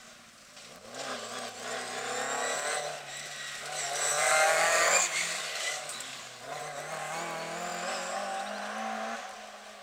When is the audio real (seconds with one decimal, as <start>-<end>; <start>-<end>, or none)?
0.0-4.1; 6.6-9.8

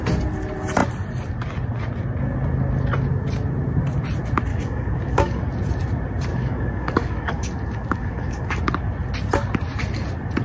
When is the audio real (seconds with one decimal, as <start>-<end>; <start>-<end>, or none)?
0.0-4.5; 5.4-6.3; 8.6-10.4

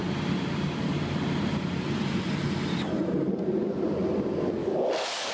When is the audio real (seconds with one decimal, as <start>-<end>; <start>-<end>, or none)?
0.0-4.6

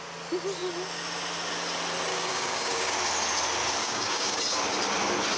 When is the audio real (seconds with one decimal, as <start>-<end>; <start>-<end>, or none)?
0.0-2.1; 2.9-3.8; 4.4-5.4